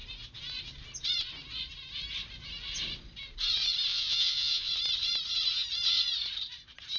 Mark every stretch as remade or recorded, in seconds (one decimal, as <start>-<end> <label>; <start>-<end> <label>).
0.0-3.9 recorded; 3.9-4.7 remade; 4.7-7.0 recorded